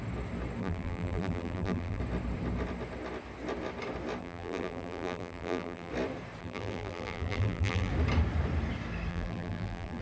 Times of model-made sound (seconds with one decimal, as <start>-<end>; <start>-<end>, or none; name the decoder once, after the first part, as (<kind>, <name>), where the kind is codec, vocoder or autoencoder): 0.6-2.0 (vocoder, BigVGAN v2); 4.2-5.9; 6.4-7.9; 9.1-10.0